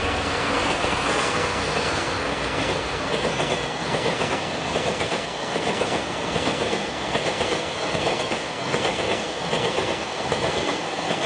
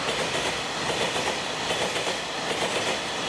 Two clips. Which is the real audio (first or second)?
second